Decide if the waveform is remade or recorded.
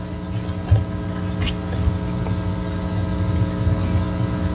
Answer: recorded